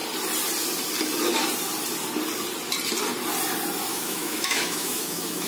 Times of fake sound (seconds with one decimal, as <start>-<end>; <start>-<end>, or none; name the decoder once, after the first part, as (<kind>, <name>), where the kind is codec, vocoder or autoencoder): 3.9-5.5 (autoencoder, DAC-VAE)